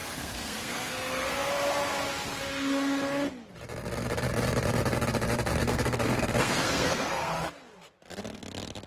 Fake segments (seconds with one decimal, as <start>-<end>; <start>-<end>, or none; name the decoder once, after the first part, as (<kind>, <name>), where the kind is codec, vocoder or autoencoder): 0.0-1.5 (codec, SNAC); 5.6-7.5